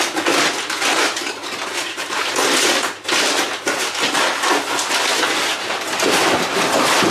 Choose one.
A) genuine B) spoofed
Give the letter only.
A